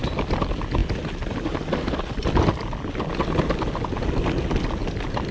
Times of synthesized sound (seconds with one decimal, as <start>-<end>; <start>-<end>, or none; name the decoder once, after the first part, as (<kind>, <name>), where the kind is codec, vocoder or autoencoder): none